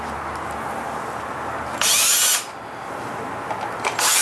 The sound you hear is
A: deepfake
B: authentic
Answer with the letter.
B